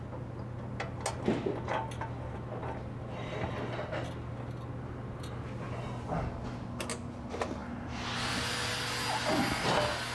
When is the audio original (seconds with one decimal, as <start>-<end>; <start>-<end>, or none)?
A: 0.0-10.1